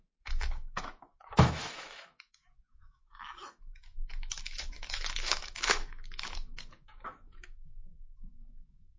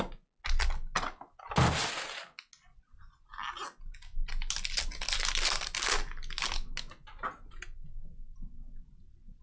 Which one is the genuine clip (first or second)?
second